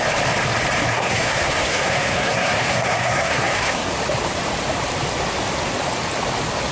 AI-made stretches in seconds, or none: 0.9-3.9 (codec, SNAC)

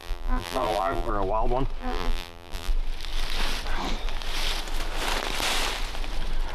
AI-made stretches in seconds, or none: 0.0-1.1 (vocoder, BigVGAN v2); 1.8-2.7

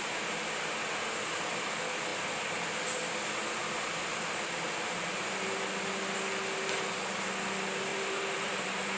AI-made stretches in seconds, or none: 7.9-9.0 (vocoder, BigVGAN v2)

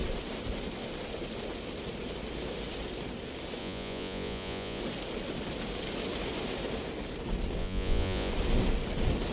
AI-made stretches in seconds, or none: 3.6-4.8 (vocoder, Vocos); 7.6-8.3